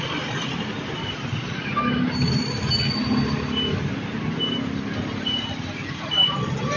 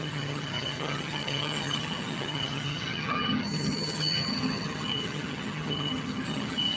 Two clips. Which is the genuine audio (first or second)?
first